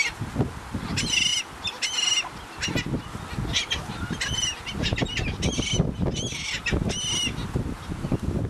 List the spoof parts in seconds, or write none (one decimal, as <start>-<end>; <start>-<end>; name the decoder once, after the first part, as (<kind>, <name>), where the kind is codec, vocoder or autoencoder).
none